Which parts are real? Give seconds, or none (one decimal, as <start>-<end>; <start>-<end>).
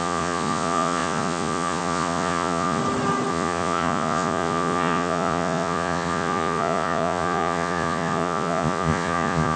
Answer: 2.8-3.3